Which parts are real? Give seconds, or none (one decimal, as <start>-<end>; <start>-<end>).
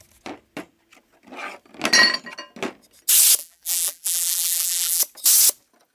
0.0-3.4; 5.0-5.9